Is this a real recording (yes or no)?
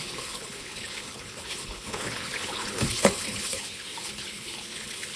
no